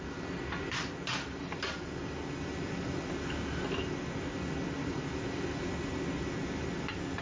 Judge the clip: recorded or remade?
recorded